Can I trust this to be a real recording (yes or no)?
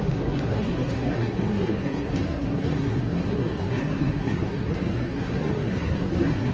no